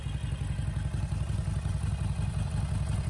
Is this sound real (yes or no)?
yes